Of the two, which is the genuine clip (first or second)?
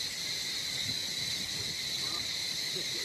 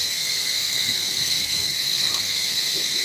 first